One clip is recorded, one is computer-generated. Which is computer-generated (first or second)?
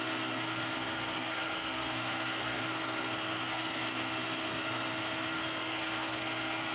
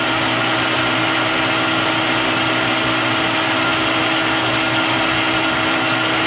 first